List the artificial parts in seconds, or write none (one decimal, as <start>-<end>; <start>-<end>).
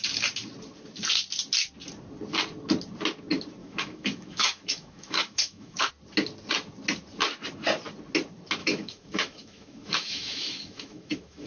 3.6-5.9; 8.6-11.5